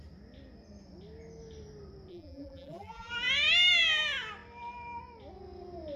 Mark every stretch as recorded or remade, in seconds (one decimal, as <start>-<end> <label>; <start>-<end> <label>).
0.0-2.1 recorded; 2.1-3.1 remade; 3.1-6.0 recorded

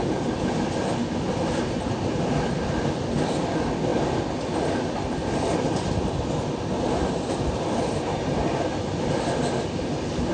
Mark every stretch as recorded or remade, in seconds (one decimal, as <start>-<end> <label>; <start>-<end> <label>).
0.0-10.3 recorded